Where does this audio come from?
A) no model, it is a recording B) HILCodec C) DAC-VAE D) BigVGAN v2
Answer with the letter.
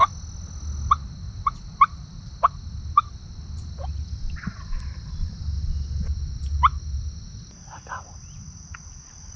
A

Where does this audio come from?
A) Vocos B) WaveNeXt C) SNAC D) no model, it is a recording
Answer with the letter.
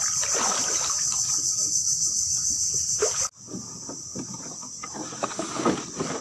D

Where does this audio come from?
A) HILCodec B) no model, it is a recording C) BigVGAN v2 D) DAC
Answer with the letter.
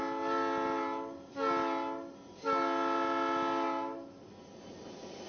B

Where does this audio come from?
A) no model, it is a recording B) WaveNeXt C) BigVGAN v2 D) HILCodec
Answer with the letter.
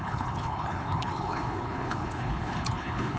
D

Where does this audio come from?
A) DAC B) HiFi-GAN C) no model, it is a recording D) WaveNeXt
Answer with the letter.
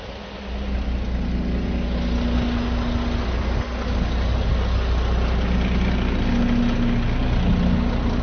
C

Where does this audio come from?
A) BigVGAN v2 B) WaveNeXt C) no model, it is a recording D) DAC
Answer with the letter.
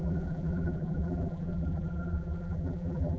A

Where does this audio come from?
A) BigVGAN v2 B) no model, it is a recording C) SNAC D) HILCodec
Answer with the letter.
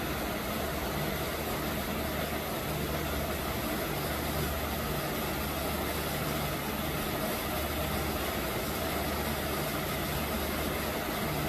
B